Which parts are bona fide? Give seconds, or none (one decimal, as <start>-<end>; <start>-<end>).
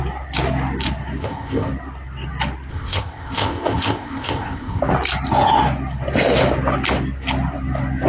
0.0-1.2; 1.7-2.7; 4.8-8.1